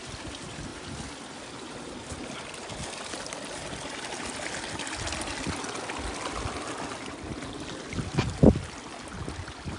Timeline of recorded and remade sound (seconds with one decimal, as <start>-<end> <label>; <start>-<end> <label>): 0.0-9.8 recorded